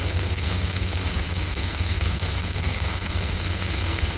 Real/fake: fake